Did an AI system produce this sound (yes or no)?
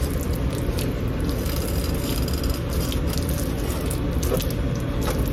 no